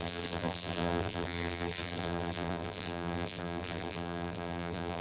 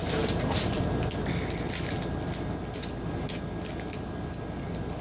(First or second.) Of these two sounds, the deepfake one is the first